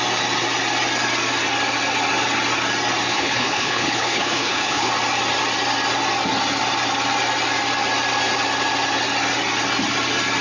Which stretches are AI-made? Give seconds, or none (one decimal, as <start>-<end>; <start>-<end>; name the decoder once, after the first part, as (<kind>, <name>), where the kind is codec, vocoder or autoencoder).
3.1-4.9 (codec, HILCodec)